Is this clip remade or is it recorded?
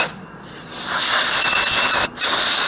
recorded